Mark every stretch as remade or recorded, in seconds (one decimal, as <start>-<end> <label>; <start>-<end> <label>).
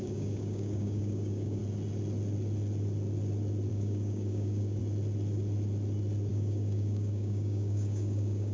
0.0-1.6 remade; 1.6-3.7 recorded; 3.7-4.8 remade; 4.8-6.3 recorded; 6.3-8.5 remade